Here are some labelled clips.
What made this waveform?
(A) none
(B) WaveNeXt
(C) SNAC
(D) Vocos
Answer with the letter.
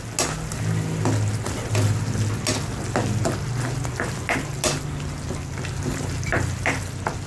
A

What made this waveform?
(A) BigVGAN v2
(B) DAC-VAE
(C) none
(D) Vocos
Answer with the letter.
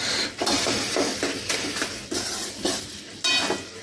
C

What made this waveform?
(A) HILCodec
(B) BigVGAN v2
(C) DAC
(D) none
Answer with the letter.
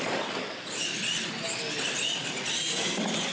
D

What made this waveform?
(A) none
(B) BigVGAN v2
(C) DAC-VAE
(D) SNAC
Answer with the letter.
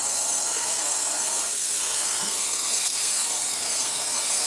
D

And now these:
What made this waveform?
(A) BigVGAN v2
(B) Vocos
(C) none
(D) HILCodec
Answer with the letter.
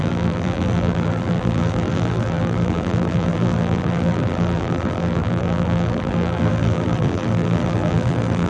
A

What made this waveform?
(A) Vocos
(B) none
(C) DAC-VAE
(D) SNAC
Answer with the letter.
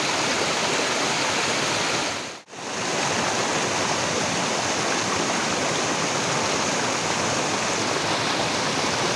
B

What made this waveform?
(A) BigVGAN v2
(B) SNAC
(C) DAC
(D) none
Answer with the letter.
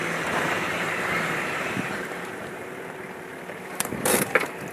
A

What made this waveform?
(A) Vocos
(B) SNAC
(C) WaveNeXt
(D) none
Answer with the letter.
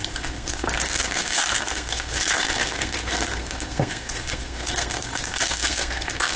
B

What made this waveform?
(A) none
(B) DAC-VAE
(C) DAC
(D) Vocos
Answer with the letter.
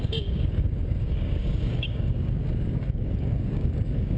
C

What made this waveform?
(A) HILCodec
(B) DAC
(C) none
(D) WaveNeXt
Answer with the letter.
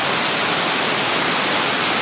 C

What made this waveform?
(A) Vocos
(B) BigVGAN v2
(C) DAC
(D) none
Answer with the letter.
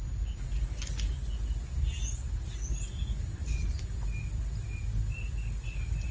D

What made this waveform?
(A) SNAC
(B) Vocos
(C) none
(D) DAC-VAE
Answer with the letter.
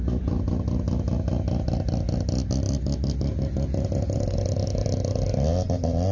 C